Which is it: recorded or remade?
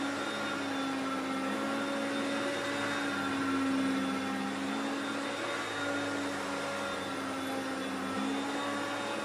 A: recorded